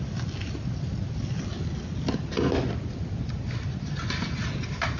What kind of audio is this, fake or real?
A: real